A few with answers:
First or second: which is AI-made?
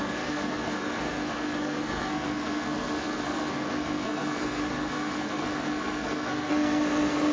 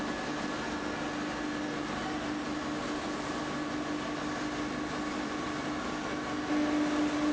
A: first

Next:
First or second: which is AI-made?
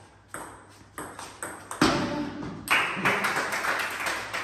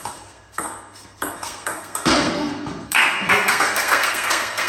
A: second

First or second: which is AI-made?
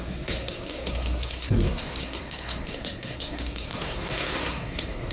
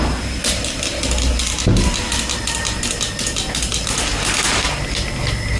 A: first